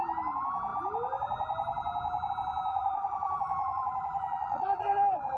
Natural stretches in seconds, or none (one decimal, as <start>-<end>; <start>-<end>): 0.0-2.7